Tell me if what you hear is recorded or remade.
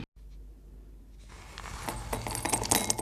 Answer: recorded